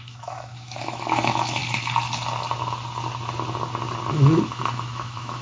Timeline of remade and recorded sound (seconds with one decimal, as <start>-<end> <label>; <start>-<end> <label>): 0.0-1.6 remade; 1.6-4.1 recorded; 4.1-5.4 remade